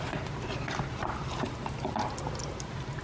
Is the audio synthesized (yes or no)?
no